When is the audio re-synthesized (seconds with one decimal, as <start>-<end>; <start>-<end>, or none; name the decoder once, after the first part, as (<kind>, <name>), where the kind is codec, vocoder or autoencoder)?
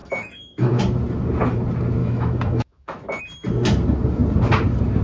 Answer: 0.0-0.8 (autoencoder, DAC-VAE); 2.0-3.2